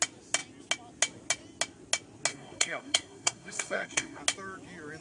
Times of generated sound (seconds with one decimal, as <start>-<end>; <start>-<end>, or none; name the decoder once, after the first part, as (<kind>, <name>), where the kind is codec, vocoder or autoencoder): 2.3-4.2 (codec, SNAC)